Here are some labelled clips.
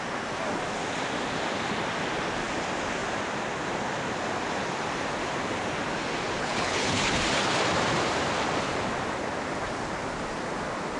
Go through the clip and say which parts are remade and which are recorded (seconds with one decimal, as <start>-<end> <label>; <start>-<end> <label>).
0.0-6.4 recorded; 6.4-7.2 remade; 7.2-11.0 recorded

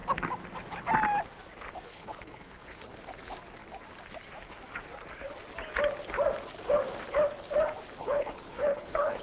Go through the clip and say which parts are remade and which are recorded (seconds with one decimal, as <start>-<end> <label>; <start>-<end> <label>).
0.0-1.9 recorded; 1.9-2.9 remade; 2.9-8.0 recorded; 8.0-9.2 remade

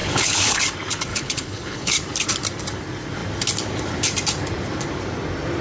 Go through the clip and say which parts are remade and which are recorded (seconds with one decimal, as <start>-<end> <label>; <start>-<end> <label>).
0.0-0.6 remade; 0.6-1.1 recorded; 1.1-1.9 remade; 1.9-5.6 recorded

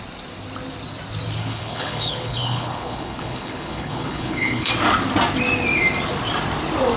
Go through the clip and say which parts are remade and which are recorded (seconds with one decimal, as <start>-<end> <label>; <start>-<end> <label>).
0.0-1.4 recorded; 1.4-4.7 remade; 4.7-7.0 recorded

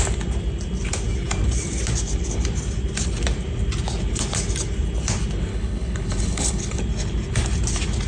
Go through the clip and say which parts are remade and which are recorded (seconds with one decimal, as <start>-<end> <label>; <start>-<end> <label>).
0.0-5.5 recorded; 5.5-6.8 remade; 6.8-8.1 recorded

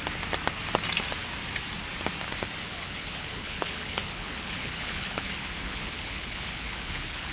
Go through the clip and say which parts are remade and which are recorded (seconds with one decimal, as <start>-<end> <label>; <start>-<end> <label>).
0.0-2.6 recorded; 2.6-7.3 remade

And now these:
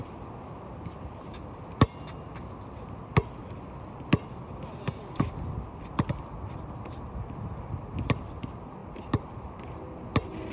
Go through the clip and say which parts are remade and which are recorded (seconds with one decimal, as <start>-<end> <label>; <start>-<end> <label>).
0.0-10.5 recorded

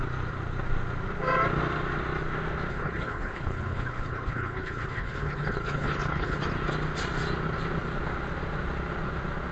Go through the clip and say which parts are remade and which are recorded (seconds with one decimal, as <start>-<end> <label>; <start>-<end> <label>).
0.0-2.7 recorded; 2.7-6.4 remade; 6.4-9.5 recorded